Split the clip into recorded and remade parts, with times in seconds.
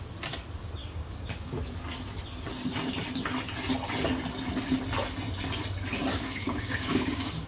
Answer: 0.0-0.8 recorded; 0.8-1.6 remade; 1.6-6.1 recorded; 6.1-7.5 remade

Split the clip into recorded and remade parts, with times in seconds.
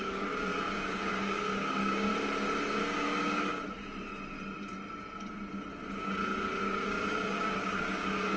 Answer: 0.0-2.1 remade; 2.1-2.8 recorded; 2.8-3.6 remade; 3.6-6.6 recorded; 6.6-8.4 remade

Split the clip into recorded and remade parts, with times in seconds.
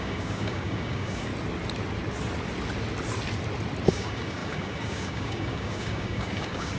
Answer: 0.0-1.3 remade; 1.3-3.9 recorded; 3.9-6.8 remade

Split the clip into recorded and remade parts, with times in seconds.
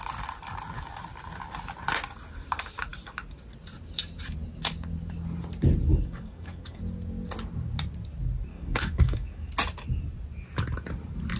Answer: 0.0-5.9 recorded; 5.9-6.8 remade; 6.8-8.5 recorded; 8.5-9.5 remade; 9.5-11.4 recorded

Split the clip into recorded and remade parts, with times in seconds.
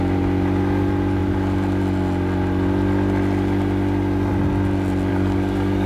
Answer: 0.0-5.1 recorded; 5.1-5.9 remade